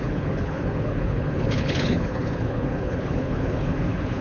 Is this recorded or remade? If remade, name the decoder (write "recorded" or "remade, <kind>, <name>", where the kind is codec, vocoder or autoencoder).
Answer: remade, codec, HILCodec